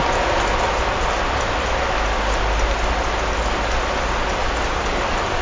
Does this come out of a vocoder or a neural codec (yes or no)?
no